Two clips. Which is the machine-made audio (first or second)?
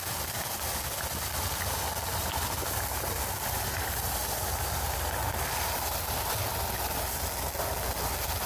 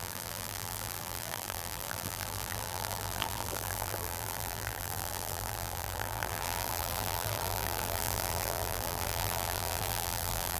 second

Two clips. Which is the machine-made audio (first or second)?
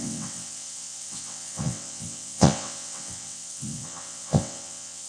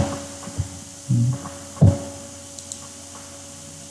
first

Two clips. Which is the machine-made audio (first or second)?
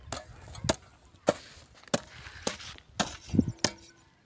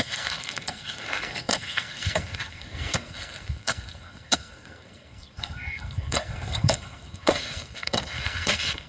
second